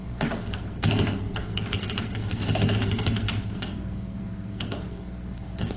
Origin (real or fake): fake